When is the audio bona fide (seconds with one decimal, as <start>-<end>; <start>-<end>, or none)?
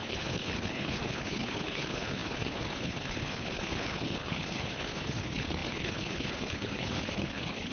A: none